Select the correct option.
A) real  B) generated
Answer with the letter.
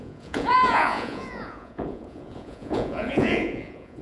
B